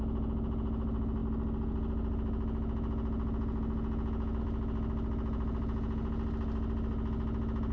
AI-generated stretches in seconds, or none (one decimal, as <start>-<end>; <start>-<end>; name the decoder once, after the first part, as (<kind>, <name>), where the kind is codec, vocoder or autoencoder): none